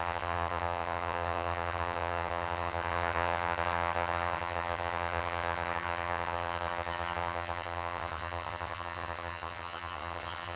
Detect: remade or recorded remade